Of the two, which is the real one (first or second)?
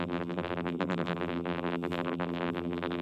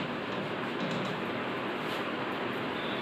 second